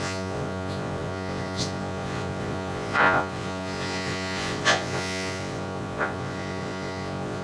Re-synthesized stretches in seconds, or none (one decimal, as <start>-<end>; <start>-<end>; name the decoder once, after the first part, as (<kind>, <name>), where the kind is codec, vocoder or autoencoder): 0.0-7.4 (vocoder, Vocos)